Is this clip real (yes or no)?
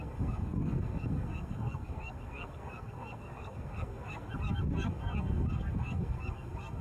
no